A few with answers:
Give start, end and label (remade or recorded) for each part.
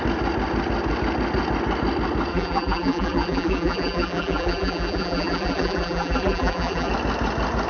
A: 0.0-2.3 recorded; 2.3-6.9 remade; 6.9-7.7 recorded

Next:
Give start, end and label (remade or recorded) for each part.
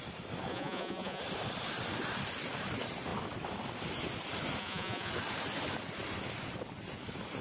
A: 0.0-0.5 recorded; 0.5-1.2 remade; 1.2-4.6 recorded; 4.6-5.1 remade; 5.1-7.4 recorded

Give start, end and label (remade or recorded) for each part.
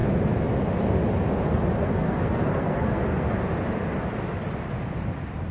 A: 0.0-1.8 recorded; 1.8-3.3 remade; 3.3-5.5 recorded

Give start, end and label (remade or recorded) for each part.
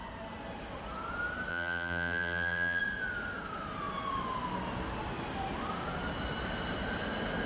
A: 0.0-1.5 recorded; 1.5-2.8 remade; 2.8-7.5 recorded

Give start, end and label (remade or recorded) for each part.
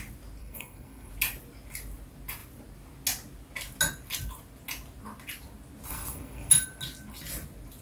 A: 0.0-0.4 recorded; 0.4-1.1 remade; 1.1-5.9 recorded; 5.9-6.5 remade; 6.5-7.8 recorded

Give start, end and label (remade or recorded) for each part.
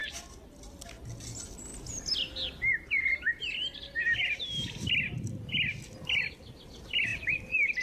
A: 0.0-7.8 recorded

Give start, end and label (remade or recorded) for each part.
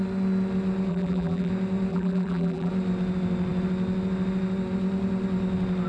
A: 0.0-0.9 recorded; 0.9-1.5 remade; 1.5-1.9 recorded; 1.9-2.7 remade; 2.7-5.9 recorded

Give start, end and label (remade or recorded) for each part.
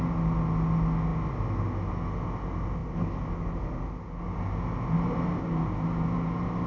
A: 0.0-6.7 recorded